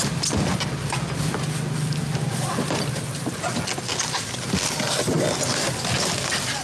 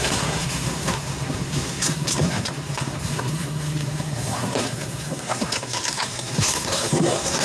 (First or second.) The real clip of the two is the first